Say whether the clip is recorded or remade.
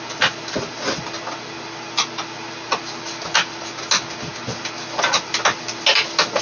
recorded